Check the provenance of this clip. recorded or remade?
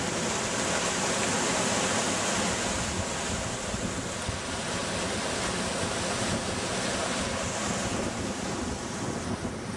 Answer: recorded